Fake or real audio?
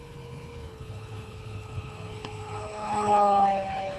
fake